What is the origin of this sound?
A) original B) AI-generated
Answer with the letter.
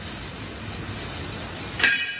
A